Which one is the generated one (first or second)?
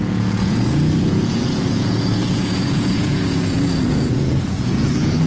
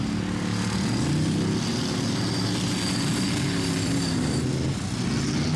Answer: first